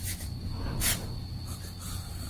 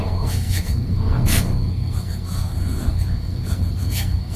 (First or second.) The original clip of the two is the first